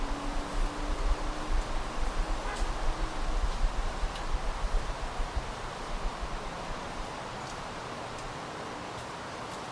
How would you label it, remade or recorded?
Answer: recorded